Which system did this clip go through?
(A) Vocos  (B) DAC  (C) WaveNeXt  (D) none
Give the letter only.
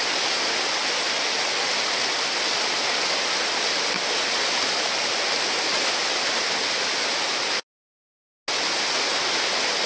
D